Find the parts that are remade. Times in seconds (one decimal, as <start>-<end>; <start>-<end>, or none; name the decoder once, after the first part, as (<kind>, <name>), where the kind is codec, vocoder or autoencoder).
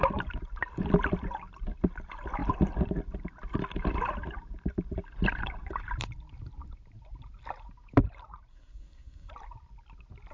8.5-9.3 (codec, SNAC)